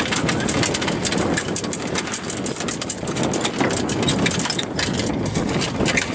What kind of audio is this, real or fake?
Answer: real